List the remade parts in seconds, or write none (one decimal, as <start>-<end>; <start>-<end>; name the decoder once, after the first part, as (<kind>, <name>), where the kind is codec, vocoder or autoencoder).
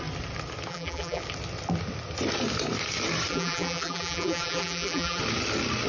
0.7-1.2 (vocoder, BigVGAN v2); 3.3-5.2